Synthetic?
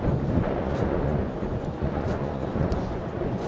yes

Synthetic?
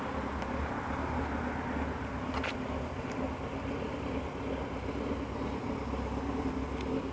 no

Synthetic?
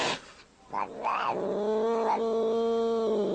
no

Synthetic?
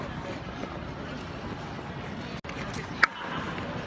no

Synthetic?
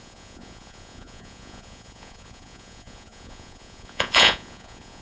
yes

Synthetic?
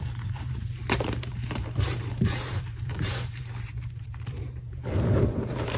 yes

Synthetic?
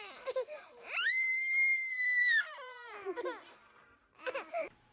yes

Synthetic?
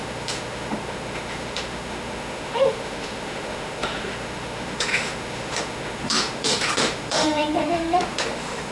yes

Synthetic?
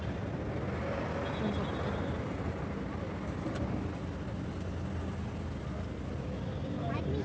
no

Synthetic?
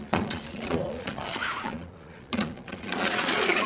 yes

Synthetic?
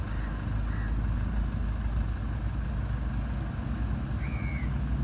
no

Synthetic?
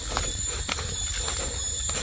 no